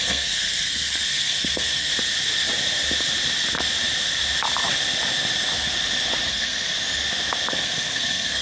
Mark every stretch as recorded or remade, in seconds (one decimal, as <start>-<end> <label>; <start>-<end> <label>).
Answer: 0.0-1.9 remade; 1.9-6.3 recorded; 6.3-6.7 remade; 6.7-7.5 recorded; 7.5-8.4 remade